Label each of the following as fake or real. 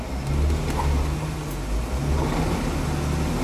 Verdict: real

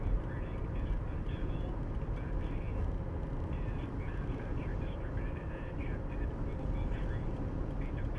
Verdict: real